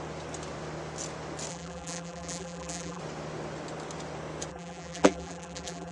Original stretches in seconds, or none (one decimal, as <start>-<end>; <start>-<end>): 0.0-1.5; 3.0-4.5